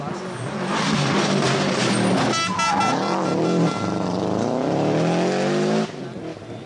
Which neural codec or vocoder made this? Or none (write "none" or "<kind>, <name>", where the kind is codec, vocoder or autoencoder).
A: none